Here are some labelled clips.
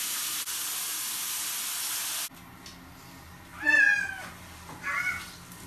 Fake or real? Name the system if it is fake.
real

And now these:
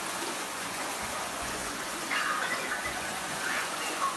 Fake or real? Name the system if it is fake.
fake, vocoder, Vocos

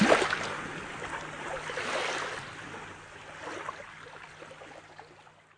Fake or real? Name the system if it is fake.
real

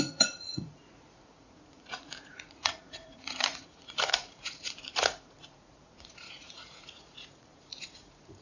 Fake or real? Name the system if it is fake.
fake, vocoder, Vocos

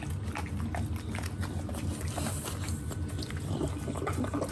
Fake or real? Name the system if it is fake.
real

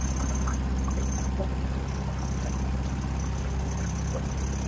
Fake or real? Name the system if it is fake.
real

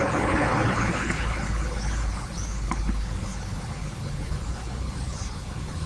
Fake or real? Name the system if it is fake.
fake, codec, HILCodec